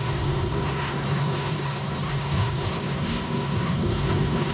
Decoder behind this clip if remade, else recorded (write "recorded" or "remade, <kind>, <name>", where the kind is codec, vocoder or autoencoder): remade, codec, SNAC